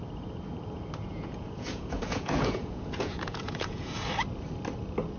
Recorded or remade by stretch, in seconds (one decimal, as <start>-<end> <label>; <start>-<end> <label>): 0.0-1.0 recorded; 1.0-4.1 remade; 4.1-5.2 recorded